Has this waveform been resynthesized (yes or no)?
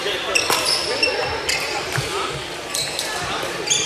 no